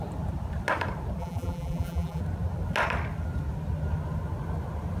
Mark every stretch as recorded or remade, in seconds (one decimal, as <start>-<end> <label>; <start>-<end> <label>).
0.0-1.2 recorded; 1.2-2.2 remade; 2.2-5.0 recorded